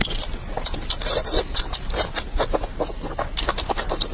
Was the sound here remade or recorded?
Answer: recorded